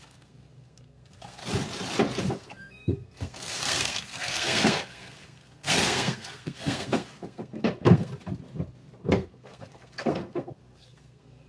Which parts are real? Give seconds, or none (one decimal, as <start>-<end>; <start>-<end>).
1.4-2.2; 8.1-9.0